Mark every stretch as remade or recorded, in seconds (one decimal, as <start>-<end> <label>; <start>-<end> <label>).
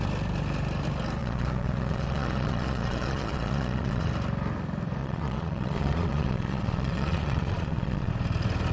0.0-1.2 recorded; 1.2-4.1 remade; 4.1-5.0 recorded; 5.0-8.1 remade; 8.1-8.7 recorded